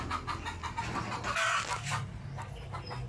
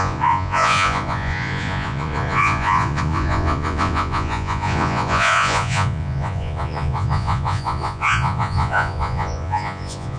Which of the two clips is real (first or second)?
first